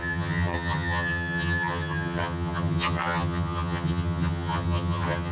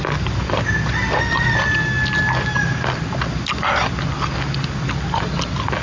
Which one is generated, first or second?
first